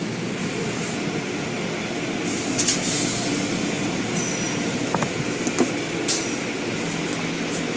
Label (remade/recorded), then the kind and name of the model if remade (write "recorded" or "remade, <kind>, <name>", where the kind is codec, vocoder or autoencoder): recorded